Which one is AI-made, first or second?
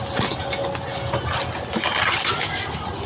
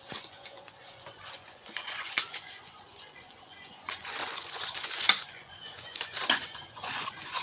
second